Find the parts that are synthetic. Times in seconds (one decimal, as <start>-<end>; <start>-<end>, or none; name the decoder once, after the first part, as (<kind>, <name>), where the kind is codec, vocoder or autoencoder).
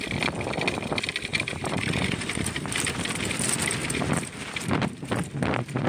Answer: 1.3-3.0 (vocoder, BigVGAN v2); 3.8-5.1